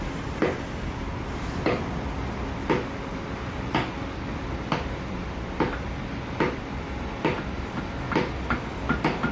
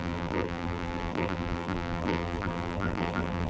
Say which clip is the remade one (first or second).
second